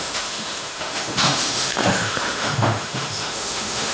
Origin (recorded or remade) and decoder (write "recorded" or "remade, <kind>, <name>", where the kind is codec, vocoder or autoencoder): remade, autoencoder, DAC-VAE